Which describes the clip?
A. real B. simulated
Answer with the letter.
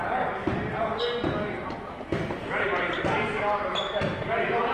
A